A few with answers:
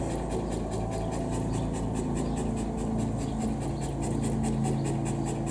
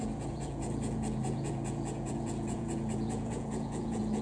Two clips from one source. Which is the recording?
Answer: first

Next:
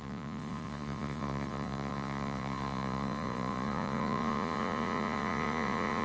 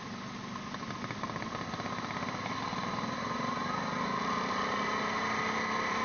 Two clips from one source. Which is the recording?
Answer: second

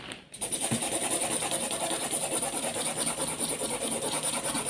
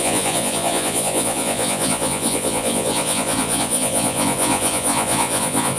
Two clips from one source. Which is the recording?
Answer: first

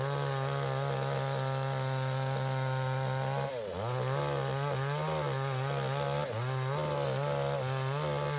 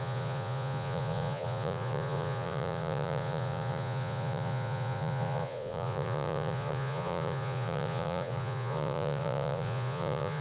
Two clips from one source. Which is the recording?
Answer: first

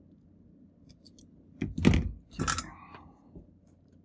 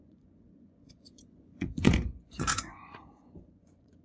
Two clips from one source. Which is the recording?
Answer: first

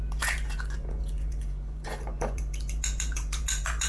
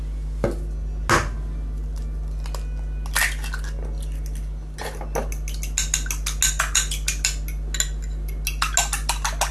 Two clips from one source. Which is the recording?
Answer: second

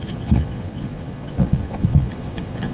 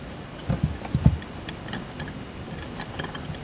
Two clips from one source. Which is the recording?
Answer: second